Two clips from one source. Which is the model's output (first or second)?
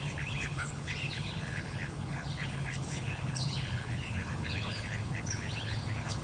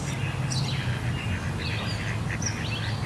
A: first